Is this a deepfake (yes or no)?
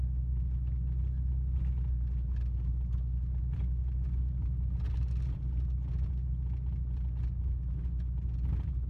no